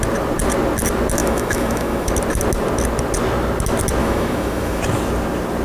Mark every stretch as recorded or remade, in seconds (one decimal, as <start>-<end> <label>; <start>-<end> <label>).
0.0-1.2 recorded; 1.2-2.1 remade; 2.1-4.0 recorded; 4.0-4.8 remade; 4.8-5.6 recorded